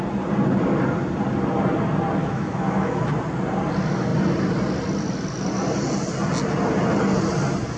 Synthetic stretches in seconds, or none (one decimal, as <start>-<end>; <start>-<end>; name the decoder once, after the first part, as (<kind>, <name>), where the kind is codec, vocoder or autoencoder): 2.2-3.1 (autoencoder, DAC-VAE)